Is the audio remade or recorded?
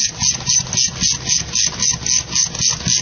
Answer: recorded